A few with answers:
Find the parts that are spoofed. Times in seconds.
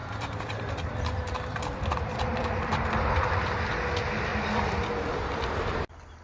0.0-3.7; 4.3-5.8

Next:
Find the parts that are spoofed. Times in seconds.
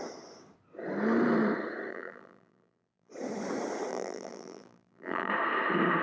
1.9-3.1; 3.9-5.3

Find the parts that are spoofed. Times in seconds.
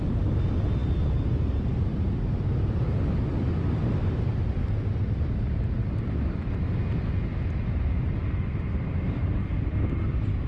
5.8-6.5; 8.2-10.5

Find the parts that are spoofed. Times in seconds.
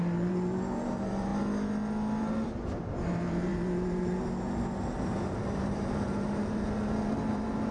0.0-1.3; 2.2-7.7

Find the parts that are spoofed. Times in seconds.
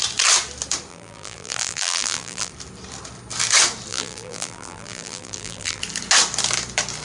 0.9-2.5; 3.9-5.8